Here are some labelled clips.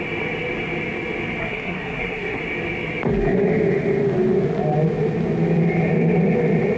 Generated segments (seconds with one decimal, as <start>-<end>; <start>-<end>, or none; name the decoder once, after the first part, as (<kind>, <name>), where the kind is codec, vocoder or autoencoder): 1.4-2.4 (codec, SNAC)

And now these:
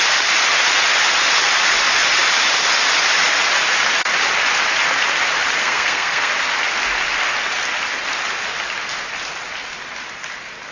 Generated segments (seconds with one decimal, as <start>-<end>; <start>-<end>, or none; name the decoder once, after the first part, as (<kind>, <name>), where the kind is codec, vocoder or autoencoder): 5.6-6.3 (codec, SNAC)

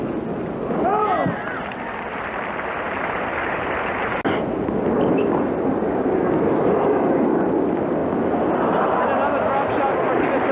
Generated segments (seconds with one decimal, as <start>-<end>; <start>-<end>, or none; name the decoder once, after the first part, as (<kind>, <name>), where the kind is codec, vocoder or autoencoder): none

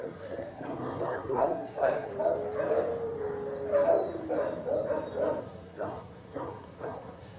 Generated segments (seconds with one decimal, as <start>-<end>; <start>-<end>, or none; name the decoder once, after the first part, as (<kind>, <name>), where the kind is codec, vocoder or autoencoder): 0.0-2.1 (codec, SNAC); 5.4-7.4

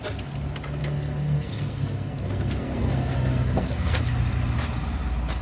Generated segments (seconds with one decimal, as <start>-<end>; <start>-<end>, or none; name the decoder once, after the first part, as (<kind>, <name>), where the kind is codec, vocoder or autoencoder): 0.8-4.0 (codec, SNAC)

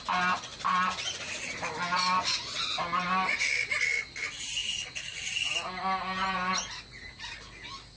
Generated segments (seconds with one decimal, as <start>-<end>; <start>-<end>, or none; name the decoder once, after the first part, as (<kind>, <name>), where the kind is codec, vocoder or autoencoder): none